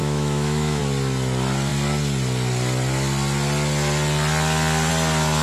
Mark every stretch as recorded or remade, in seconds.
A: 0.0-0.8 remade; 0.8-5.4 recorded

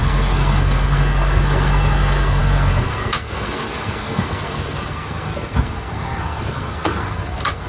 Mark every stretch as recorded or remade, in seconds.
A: 0.0-7.7 remade

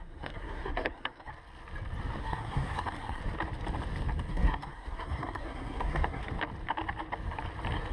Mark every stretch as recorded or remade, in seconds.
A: 0.0-1.3 remade; 1.3-2.2 recorded; 2.2-3.2 remade; 3.2-4.3 recorded; 4.3-6.2 remade; 6.2-7.9 recorded

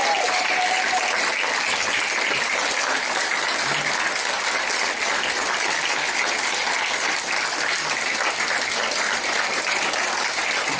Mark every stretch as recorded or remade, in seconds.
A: 0.0-10.8 recorded

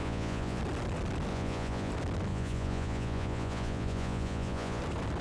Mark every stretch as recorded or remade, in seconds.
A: 0.0-0.6 remade; 0.6-1.3 recorded; 1.3-1.9 remade; 1.9-2.3 recorded; 2.3-4.8 remade; 4.8-5.2 recorded

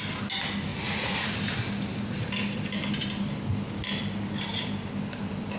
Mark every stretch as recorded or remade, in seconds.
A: 0.0-0.7 recorded; 0.7-1.3 remade; 1.3-5.6 recorded